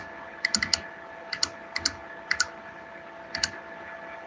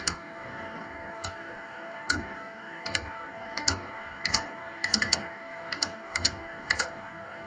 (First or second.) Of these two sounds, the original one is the first